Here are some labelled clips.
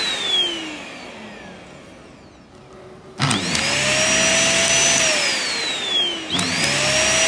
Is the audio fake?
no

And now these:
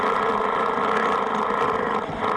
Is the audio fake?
no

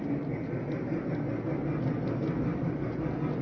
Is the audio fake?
no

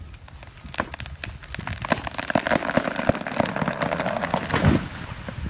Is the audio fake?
no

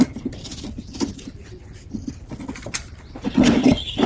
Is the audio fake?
no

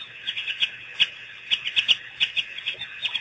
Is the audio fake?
no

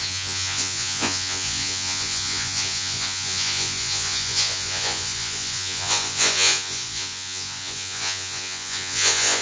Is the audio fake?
yes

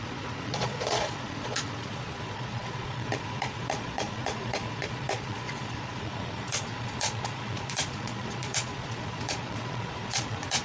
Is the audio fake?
yes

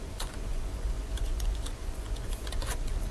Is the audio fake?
yes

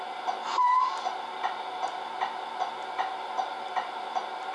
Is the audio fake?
no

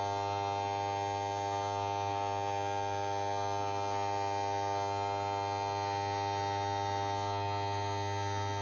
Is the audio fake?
no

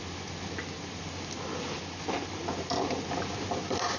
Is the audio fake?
no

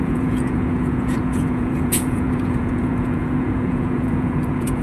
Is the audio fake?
yes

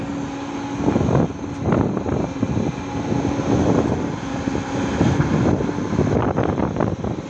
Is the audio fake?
no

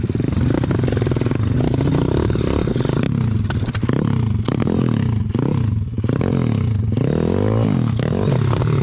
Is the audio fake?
no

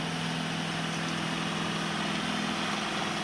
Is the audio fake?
no